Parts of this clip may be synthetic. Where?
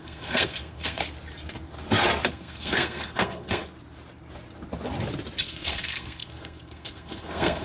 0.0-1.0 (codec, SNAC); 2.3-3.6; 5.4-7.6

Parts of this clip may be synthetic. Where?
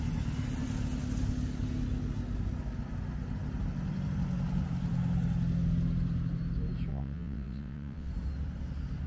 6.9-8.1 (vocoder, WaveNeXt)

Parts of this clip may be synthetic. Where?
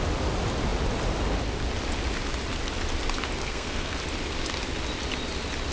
3.4-4.0 (codec, SNAC)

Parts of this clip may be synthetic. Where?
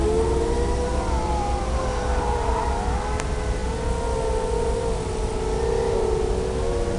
none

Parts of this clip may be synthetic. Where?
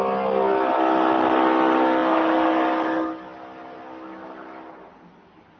none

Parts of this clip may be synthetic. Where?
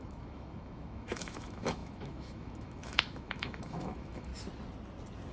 0.0-4.3 (autoencoder, DAC-VAE)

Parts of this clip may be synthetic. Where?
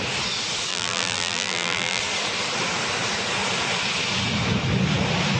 0.7-2.0 (vocoder, BigVGAN v2)